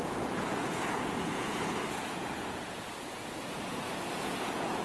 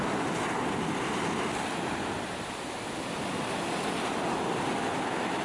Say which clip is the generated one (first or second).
first